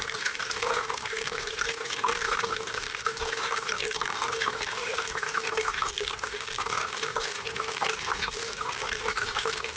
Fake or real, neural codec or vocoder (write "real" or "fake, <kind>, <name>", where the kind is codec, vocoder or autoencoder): fake, codec, DAC